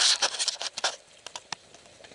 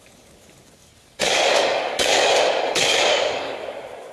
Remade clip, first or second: second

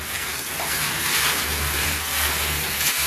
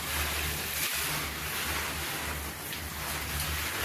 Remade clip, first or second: first